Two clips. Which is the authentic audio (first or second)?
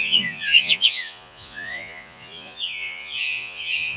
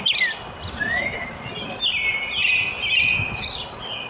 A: second